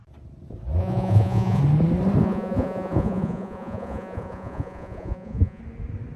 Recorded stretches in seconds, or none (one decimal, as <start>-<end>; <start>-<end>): 0.0-0.8; 1.6-2.2; 5.6-6.2